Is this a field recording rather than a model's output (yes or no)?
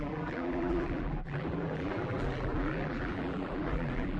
no